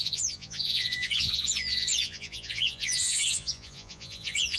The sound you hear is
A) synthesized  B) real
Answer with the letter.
A